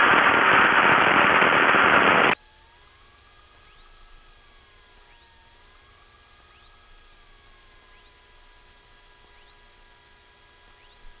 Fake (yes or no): no